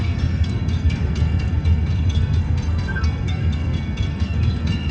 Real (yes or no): no